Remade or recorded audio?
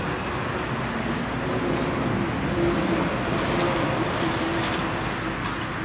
recorded